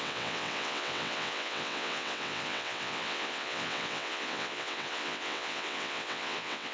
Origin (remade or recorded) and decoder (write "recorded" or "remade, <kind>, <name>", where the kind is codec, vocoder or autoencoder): remade, vocoder, WaveNeXt